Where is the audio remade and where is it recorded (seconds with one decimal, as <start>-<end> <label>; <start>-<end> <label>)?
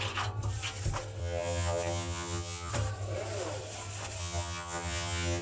0.0-1.2 recorded; 1.2-2.7 remade; 2.7-4.2 recorded; 4.2-5.4 remade